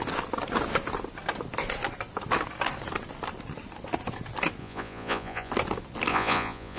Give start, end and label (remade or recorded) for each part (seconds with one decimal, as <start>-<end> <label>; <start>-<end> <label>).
0.0-4.6 recorded; 4.6-5.5 remade; 5.5-6.1 recorded; 6.1-6.8 remade